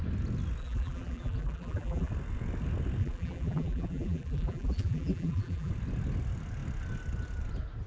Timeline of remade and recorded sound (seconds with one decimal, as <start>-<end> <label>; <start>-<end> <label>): 0.0-0.6 recorded; 0.6-2.1 remade; 2.1-3.0 recorded; 3.0-5.7 remade; 5.7-7.9 recorded